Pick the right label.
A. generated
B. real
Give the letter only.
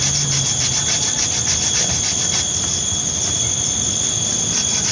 B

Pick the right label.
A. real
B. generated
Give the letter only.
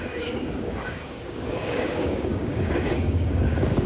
B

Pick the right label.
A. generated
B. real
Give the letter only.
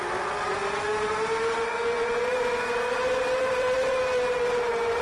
B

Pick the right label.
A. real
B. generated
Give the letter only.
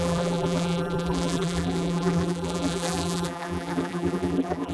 B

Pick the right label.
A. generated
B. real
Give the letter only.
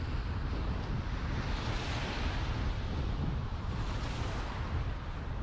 A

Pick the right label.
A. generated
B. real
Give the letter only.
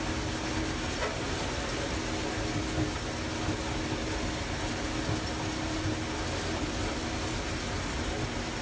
B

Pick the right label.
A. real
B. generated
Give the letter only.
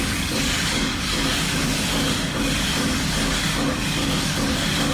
B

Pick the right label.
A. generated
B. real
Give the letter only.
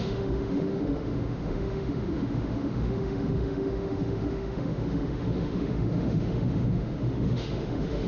A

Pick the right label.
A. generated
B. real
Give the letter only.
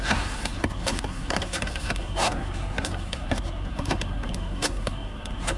A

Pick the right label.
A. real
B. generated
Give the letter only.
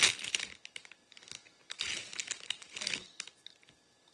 A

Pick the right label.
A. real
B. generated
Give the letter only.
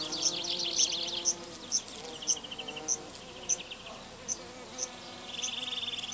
A